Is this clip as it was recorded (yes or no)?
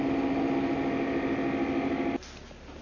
yes